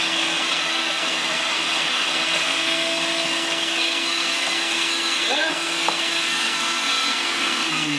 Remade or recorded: remade